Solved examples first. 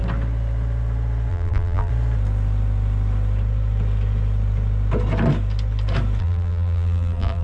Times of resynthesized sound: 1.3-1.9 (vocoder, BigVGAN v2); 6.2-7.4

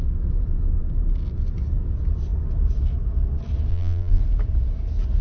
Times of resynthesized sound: 3.7-4.2 (vocoder, BigVGAN v2)

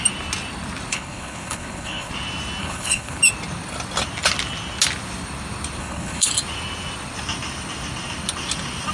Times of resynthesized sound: 0.9-2.1 (codec, HILCodec); 2.6-3.2; 5.8-6.3

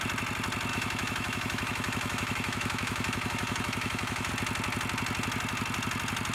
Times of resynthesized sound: 0.7-4.3 (autoencoder, DAC-VAE)

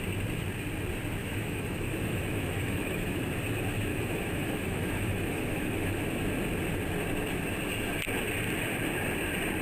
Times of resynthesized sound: 1.2-3.2 (autoencoder, DAC-VAE); 3.9-6.0

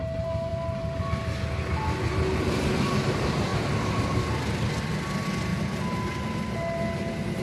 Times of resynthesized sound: none